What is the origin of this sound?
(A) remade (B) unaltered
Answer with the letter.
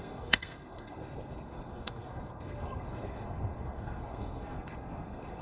A